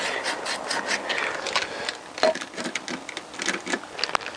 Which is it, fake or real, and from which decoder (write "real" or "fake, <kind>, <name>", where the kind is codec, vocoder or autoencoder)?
real